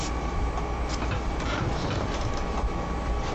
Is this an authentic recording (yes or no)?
yes